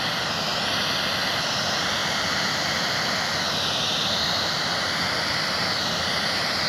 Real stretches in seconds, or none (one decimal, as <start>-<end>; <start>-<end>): 0.0-6.7